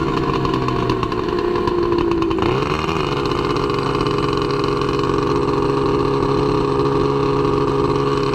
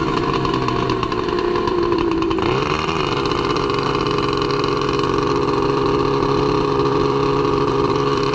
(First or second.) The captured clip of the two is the first